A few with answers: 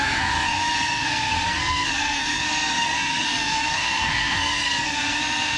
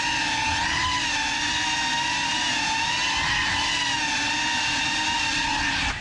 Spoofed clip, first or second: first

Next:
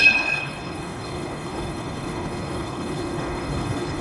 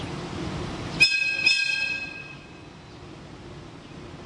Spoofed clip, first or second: first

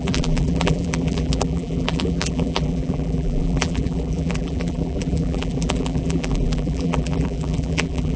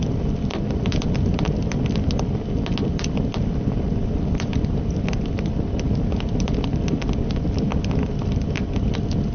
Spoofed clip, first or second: first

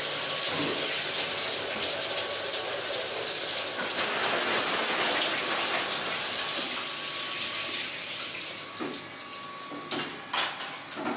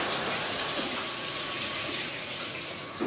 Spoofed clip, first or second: second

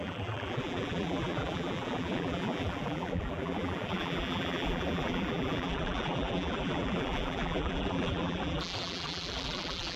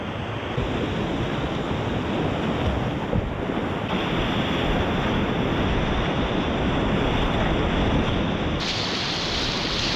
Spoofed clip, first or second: first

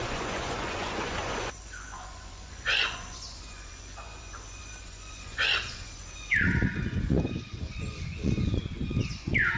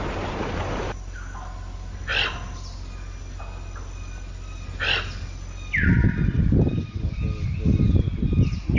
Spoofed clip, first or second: first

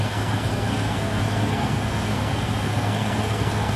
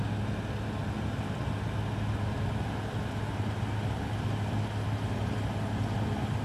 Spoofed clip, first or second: first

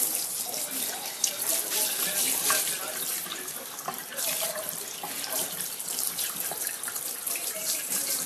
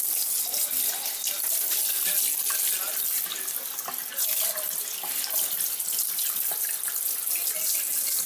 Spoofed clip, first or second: first